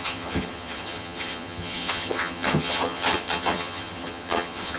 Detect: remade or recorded remade